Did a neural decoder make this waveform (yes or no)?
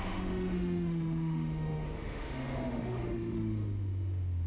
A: yes